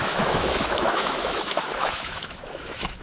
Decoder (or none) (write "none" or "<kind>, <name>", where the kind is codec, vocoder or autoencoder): autoencoder, DAC-VAE